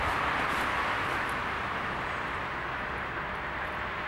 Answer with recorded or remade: recorded